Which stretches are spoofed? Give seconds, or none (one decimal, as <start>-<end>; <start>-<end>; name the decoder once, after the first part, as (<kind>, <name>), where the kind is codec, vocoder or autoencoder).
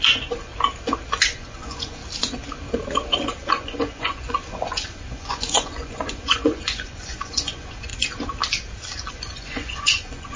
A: 0.0-0.5 (vocoder, Vocos); 1.1-2.0; 3.5-7.9; 9.1-10.4